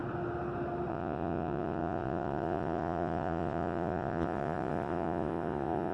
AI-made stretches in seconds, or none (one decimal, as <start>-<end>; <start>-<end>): 0.9-5.9